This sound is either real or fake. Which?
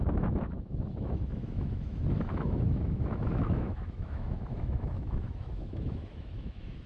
fake